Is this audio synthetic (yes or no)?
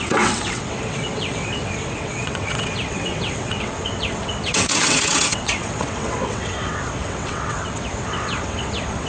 yes